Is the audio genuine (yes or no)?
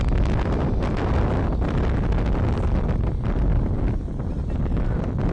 yes